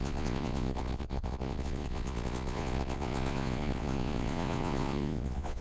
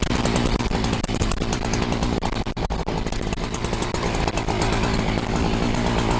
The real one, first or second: second